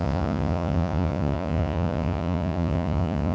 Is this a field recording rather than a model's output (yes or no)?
no